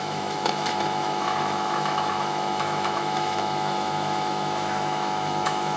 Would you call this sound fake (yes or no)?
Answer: yes